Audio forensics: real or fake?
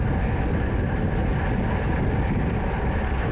real